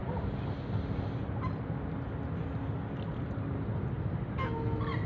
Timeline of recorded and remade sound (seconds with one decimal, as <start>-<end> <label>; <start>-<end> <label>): 0.0-5.1 recorded